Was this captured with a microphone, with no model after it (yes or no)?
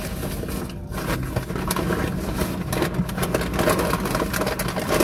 yes